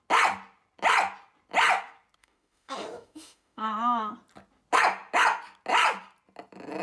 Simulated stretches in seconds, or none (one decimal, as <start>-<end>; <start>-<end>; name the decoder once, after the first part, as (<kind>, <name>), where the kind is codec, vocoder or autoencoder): 2.2-4.1 (autoencoder, DAC-VAE)

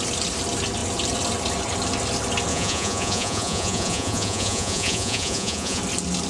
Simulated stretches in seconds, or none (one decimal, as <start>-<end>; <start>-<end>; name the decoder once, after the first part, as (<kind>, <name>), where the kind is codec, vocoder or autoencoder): 2.5-5.8 (vocoder, Vocos)